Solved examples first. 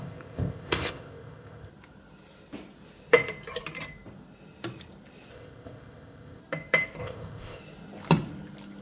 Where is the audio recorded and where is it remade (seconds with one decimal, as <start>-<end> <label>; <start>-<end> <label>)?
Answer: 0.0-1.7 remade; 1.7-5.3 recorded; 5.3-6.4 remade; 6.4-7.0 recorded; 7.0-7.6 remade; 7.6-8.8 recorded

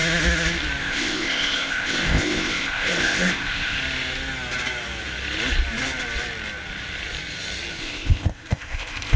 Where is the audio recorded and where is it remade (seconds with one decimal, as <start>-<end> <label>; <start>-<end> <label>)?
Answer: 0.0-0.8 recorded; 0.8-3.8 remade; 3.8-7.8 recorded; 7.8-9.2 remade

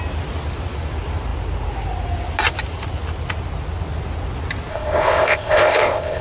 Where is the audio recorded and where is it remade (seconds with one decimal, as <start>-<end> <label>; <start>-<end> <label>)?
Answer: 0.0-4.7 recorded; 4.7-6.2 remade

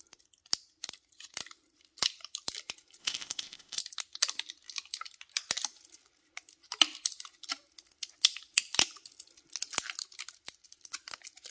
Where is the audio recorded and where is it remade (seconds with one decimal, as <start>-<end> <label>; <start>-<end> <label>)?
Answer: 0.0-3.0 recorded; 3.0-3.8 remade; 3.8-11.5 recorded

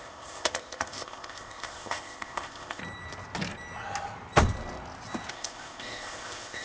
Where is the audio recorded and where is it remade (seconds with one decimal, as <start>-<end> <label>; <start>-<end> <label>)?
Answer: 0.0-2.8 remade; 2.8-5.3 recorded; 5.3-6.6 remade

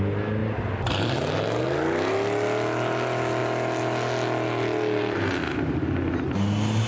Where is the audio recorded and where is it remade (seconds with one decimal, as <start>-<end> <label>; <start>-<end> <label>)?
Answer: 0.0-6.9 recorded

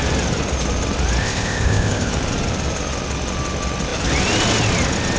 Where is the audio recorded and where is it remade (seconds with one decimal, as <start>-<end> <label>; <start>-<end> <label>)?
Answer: 0.0-1.2 recorded; 1.2-2.1 remade; 2.1-5.2 recorded

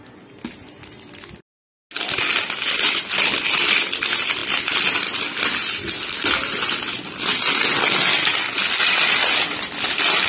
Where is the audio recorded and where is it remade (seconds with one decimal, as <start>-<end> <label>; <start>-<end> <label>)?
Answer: 0.0-10.3 recorded